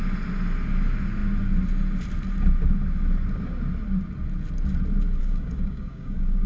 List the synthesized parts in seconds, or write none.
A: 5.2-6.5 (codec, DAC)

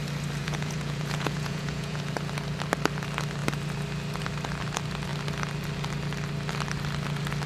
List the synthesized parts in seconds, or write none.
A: 0.4-2.0 (vocoder, Vocos)